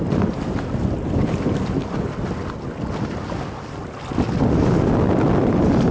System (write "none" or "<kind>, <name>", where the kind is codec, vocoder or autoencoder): none